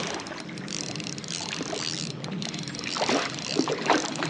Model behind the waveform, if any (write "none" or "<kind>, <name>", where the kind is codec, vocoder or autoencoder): none